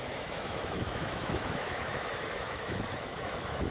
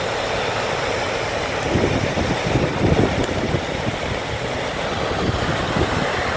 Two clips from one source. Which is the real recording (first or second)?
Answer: second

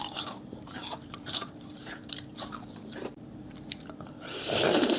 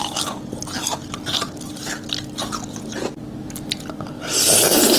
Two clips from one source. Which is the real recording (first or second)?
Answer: second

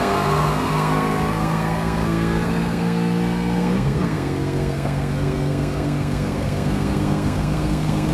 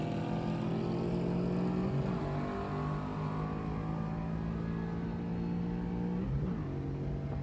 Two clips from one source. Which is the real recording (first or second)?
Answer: second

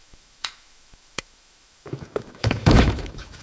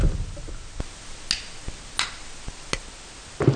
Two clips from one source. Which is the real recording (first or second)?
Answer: second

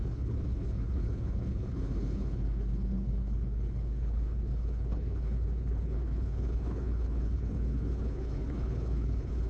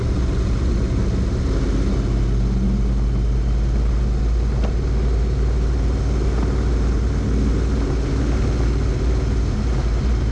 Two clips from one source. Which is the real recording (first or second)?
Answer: second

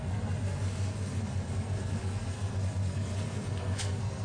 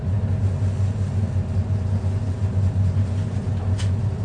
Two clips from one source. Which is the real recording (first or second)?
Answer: second